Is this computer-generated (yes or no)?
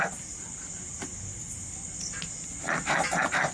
no